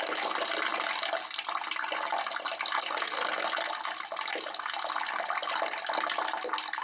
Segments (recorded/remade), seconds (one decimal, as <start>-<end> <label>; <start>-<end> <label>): 0.0-6.8 recorded